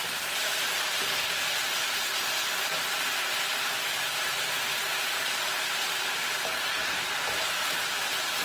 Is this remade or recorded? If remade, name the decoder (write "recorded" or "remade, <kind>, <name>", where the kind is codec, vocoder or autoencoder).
remade, vocoder, BigVGAN v2